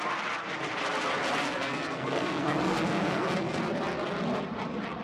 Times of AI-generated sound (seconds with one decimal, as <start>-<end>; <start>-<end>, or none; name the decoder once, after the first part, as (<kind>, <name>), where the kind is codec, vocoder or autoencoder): 1.4-3.6 (codec, SNAC)